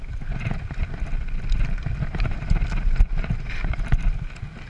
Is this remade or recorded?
recorded